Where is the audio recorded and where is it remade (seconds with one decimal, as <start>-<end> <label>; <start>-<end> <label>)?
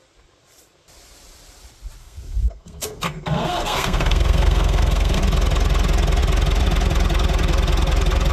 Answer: 0.0-2.0 recorded; 2.0-5.2 remade; 5.2-8.3 recorded